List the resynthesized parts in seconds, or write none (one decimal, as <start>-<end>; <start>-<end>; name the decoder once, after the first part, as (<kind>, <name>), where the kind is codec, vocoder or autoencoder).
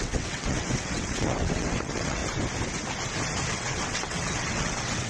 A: 0.0-2.2 (vocoder, WaveNeXt); 3.5-5.1